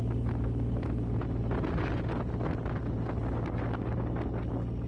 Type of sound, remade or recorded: recorded